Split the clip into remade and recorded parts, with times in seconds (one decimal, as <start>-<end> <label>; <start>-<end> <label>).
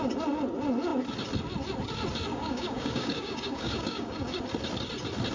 0.0-2.3 recorded; 2.3-4.4 remade; 4.4-5.3 recorded